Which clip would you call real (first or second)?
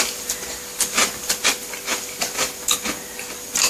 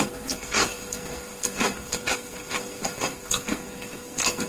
first